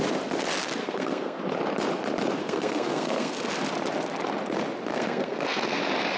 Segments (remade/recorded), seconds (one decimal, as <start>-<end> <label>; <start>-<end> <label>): 0.0-0.8 recorded; 0.8-1.4 remade; 1.4-2.4 recorded; 2.4-3.3 remade; 3.3-4.9 recorded; 4.9-5.8 remade; 5.8-6.2 recorded